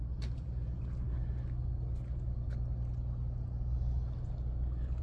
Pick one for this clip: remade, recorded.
recorded